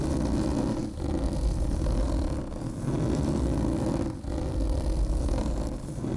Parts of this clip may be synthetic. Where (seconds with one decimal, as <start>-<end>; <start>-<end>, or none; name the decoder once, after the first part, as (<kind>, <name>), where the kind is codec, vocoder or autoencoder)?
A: none